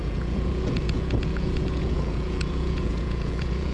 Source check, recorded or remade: remade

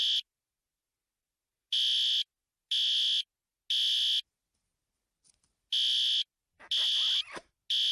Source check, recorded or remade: recorded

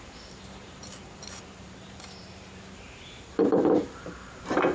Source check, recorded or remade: remade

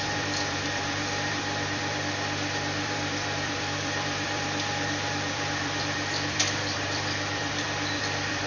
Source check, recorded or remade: remade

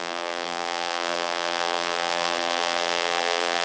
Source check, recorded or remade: remade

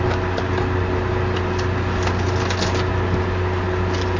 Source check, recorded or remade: recorded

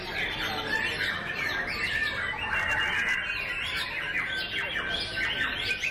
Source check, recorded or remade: recorded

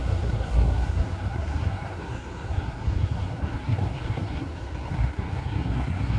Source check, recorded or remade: remade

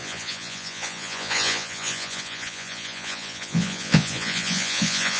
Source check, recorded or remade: remade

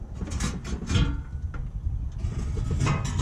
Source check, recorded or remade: recorded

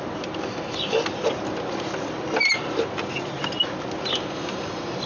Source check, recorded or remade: recorded